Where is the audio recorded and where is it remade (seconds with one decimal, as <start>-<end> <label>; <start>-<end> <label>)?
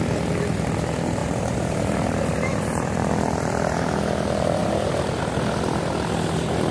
0.0-1.2 recorded; 1.2-3.1 remade; 3.1-4.6 recorded; 4.6-5.2 remade; 5.2-6.7 recorded